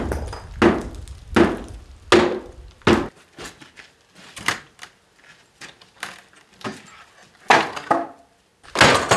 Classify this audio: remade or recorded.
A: recorded